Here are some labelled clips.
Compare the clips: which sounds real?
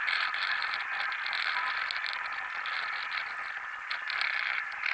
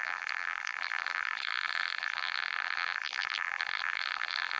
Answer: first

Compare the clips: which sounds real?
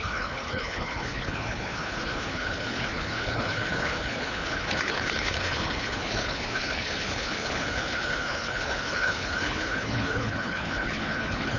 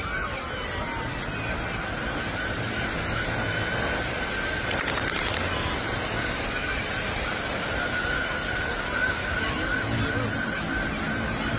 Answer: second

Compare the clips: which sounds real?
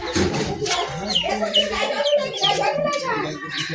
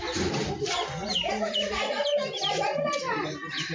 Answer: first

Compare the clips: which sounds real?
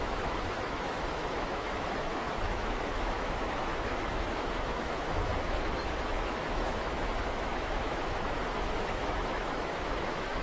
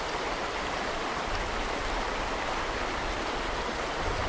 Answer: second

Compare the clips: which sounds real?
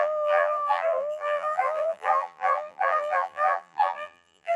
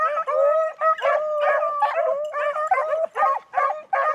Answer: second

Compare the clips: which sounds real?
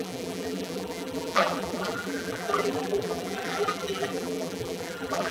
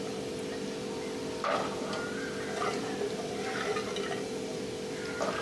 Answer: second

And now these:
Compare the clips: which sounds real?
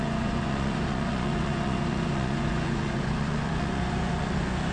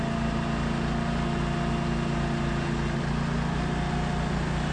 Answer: second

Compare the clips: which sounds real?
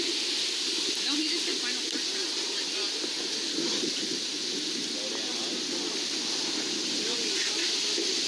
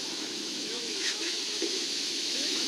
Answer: first